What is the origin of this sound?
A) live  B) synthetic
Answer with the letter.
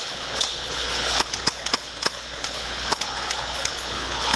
B